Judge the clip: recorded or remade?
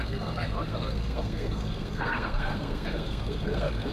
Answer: remade